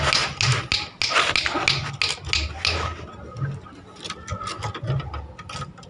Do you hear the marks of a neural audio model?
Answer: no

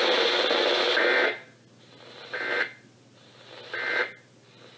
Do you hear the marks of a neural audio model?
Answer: no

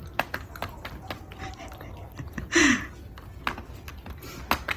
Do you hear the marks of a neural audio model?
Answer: no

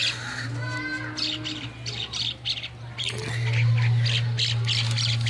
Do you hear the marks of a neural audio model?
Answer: no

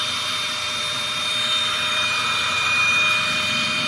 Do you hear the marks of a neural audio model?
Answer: yes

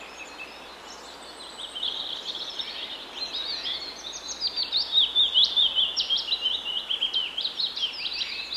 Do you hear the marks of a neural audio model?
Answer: no